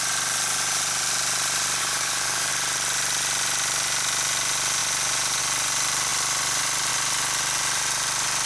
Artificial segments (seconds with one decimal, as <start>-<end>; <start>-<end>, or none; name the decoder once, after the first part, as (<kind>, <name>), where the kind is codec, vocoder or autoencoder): 1.8-2.5 (codec, DAC)